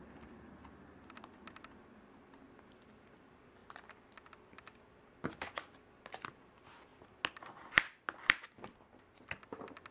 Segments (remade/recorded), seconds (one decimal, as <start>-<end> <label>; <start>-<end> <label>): 0.0-9.9 recorded